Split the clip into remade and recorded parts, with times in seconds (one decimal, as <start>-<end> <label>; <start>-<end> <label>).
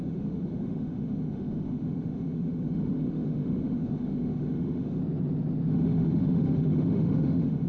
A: 0.0-5.0 remade; 5.0-5.7 recorded; 5.7-7.7 remade